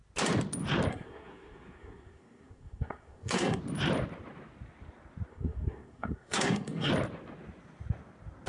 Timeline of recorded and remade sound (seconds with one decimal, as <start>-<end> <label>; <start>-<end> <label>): 0.0-0.9 recorded; 0.9-3.6 remade; 3.6-5.3 recorded; 5.3-6.9 remade; 6.9-8.5 recorded